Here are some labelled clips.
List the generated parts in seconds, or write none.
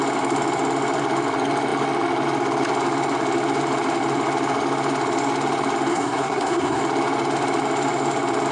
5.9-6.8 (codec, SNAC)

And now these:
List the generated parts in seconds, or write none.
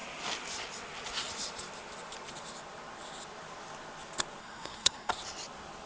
4.4-5.1 (codec, SNAC)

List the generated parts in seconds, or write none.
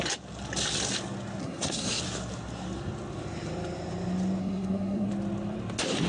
1.4-2.0 (codec, SNAC); 4.4-5.1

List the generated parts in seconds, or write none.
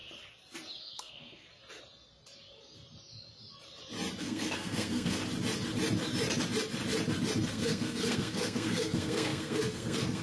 0.8-1.5 (codec, SNAC); 4.2-5.2; 7.5-10.2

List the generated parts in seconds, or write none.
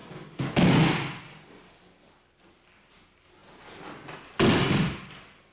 none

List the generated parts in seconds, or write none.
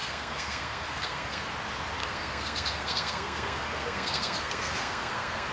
0.0-1.4 (codec, SNAC); 2.0-5.5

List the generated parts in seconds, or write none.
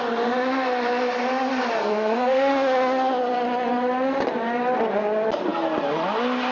1.8-2.5 (codec, SNAC)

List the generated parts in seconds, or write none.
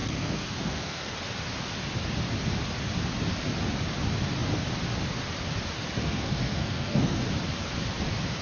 0.0-1.1 (codec, SNAC); 6.0-7.2